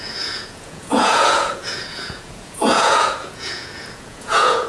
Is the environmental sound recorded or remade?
remade